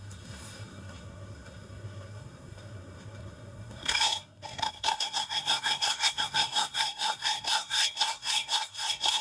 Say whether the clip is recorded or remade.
remade